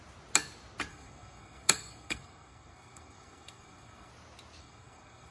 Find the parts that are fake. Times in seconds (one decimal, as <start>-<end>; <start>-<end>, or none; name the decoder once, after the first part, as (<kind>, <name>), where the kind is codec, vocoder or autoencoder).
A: 0.9-4.1 (codec, SNAC); 4.6-5.3